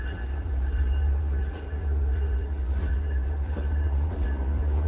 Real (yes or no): no